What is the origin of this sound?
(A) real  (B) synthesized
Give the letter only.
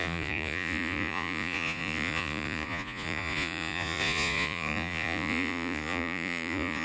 B